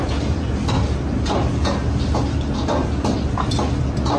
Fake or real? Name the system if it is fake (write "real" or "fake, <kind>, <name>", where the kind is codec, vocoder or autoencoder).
real